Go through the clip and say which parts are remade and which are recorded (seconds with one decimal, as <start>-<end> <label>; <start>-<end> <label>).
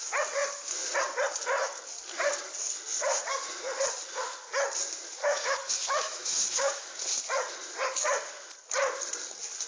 0.0-5.2 recorded; 5.2-7.0 remade; 7.0-9.7 recorded